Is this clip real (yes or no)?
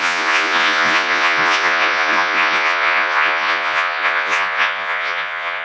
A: no